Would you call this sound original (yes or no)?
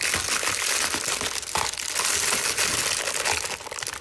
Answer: yes